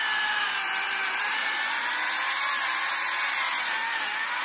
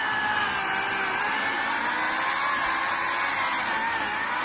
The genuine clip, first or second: second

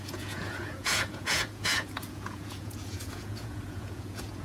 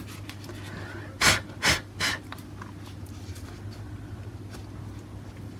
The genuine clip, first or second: second